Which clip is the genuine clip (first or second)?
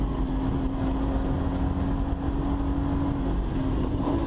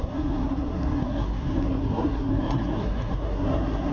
first